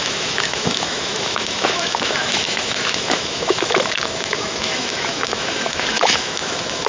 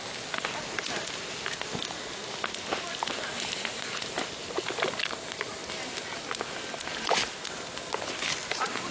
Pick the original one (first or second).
second